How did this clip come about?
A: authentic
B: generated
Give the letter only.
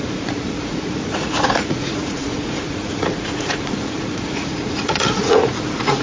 B